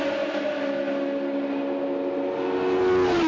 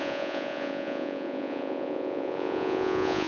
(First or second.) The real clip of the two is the first